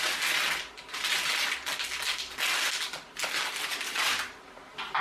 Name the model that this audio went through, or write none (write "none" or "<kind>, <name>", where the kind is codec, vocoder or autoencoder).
none